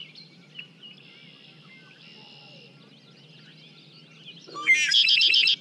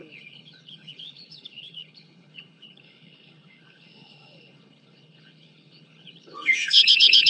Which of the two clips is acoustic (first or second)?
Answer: first